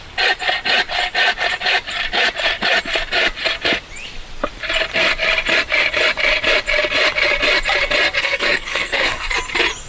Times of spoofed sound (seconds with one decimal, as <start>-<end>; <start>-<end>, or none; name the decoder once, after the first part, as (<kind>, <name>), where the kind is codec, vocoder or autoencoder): 8.2-9.3 (codec, SNAC)